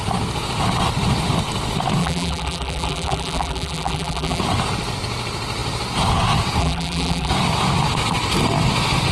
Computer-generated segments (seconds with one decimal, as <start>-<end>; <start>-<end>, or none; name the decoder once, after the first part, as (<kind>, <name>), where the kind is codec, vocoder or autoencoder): 2.0-4.4 (vocoder, BigVGAN v2); 6.6-7.3